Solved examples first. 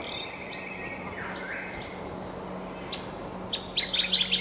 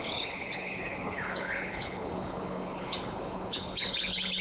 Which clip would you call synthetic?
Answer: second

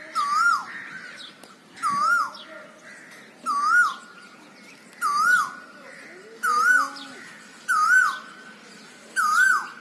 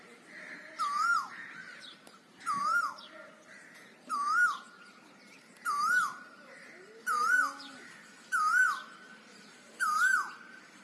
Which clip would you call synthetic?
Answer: second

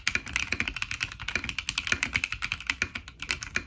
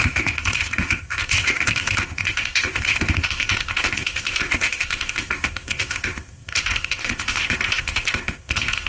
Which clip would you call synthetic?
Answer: second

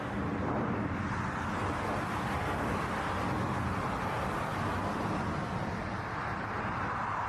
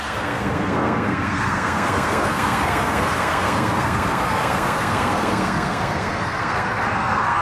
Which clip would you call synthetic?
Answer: second